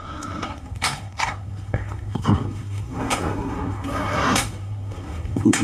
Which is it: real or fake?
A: fake